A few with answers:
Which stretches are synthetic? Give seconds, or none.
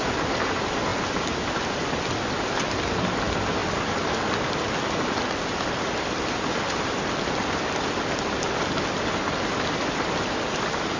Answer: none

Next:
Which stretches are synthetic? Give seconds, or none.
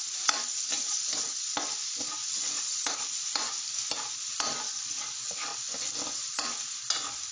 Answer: none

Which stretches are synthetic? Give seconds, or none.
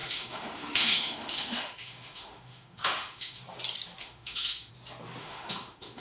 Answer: 0.0-3.4 (autoencoder, DAC-VAE); 4.0-4.7; 5.2-6.0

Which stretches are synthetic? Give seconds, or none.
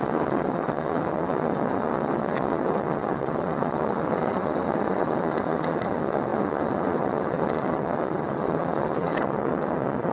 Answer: 0.0-10.1 (vocoder, WaveNeXt)